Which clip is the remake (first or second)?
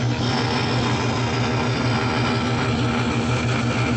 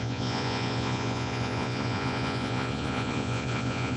second